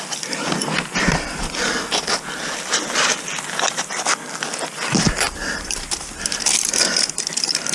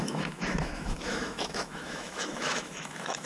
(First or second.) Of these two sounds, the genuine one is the first